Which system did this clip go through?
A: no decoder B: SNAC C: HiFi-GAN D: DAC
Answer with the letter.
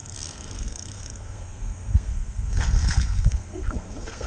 B